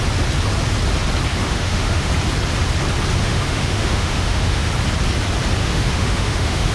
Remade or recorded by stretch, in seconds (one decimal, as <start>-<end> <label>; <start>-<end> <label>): 0.0-1.3 recorded; 1.3-2.1 remade; 2.1-3.2 recorded; 3.2-4.7 remade; 4.7-5.6 recorded; 5.6-6.7 remade